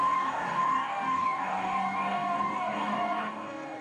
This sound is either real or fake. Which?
fake